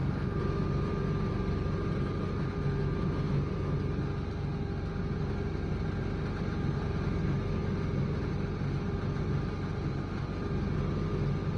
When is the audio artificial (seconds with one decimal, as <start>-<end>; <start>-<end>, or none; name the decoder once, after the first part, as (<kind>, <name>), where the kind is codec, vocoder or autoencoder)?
none